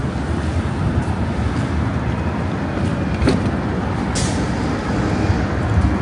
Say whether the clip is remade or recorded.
recorded